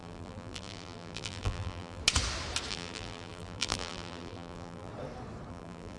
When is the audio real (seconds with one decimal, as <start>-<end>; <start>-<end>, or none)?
2.0-2.7; 4.9-5.5